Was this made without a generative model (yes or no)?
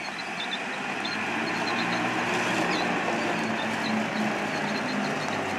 yes